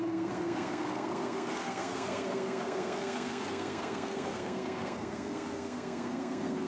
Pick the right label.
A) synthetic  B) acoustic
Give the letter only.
A